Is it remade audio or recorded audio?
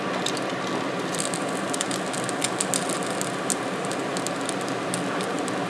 recorded